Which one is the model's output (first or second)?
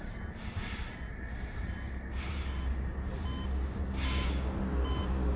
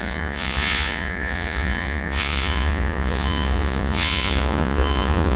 second